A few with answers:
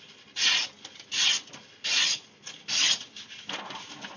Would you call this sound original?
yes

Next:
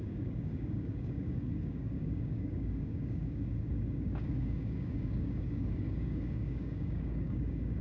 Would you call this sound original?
no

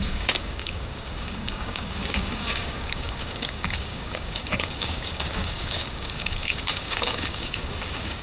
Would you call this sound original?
no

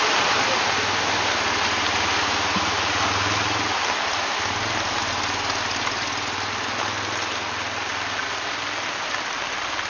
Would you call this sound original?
yes